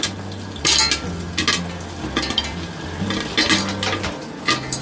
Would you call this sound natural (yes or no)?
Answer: yes